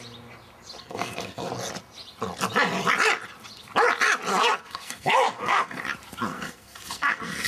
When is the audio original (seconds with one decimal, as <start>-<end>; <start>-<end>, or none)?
0.0-0.8; 1.5-4.3; 5.8-6.3